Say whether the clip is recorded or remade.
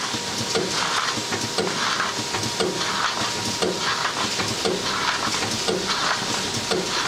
recorded